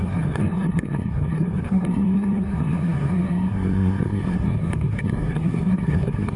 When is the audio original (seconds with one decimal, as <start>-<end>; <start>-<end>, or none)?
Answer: none